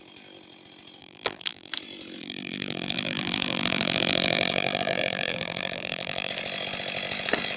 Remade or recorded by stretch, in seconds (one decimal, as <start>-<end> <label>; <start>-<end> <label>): 0.0-1.0 recorded; 1.0-1.7 remade; 1.7-2.2 recorded; 2.2-6.3 remade; 6.3-7.6 recorded